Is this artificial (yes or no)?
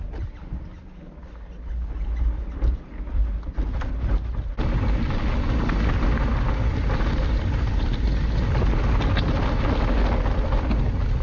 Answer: no